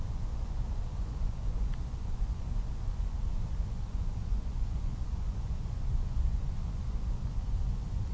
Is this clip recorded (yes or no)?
no